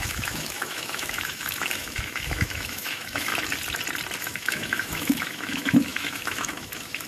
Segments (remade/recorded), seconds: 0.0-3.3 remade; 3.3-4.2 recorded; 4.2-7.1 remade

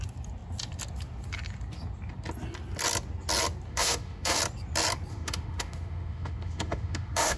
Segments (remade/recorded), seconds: 0.0-3.7 recorded; 3.7-4.4 remade; 4.4-5.1 recorded; 5.1-7.4 remade

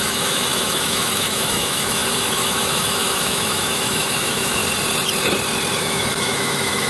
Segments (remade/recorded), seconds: 0.0-4.6 remade; 4.6-5.8 recorded; 5.8-6.9 remade

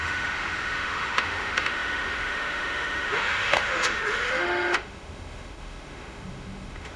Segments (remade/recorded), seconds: 0.0-7.0 remade

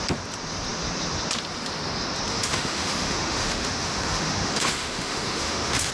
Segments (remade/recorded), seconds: 0.0-2.3 recorded; 2.3-5.9 remade